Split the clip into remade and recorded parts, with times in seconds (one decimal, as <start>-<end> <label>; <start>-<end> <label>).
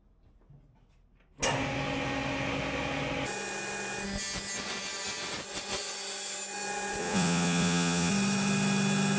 0.0-7.0 recorded; 7.0-8.1 remade; 8.1-9.2 recorded